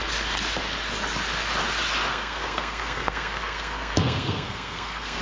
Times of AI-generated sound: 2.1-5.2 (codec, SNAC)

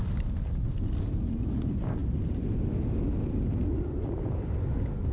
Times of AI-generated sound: none

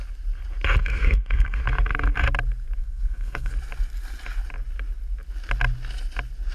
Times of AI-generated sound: 0.8-1.6 (codec, SNAC); 2.8-3.5